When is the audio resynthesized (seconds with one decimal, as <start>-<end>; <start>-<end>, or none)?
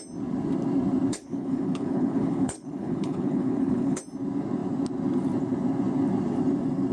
1.1-4.0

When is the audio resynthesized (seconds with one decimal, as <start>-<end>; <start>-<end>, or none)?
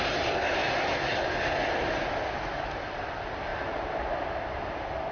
none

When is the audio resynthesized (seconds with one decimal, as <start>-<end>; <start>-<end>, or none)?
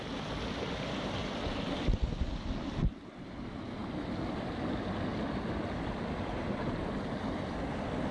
none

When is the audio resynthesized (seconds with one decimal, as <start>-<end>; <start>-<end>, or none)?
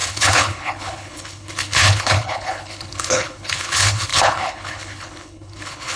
0.0-6.0